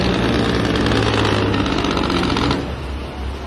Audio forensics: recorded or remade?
recorded